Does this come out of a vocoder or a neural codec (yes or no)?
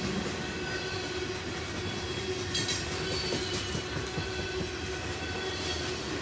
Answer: no